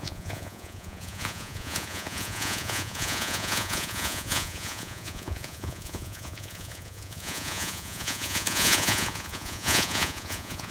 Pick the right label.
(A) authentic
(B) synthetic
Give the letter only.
B